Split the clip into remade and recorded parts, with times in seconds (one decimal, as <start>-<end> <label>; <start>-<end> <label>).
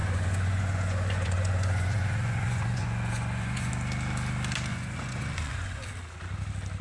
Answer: 0.0-3.7 remade; 3.7-4.7 recorded; 4.7-5.8 remade; 5.8-6.8 recorded